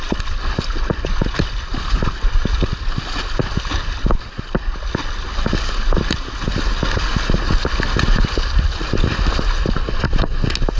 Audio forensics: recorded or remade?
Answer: recorded